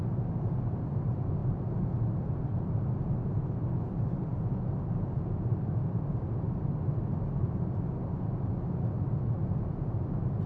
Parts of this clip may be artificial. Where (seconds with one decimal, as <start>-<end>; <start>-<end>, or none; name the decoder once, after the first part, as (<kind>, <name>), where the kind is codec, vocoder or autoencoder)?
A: 9.4-9.9 (vocoder, Vocos)